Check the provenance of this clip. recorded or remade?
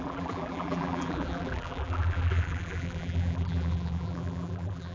remade